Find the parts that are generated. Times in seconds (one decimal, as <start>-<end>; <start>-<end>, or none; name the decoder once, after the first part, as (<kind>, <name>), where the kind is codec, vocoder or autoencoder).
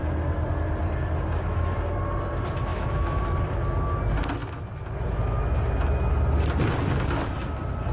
2.7-3.2 (autoencoder, DAC-VAE)